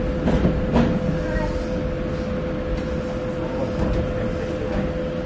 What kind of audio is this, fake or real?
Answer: real